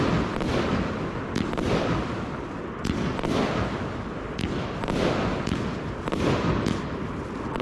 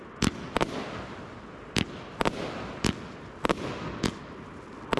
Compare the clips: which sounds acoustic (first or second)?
second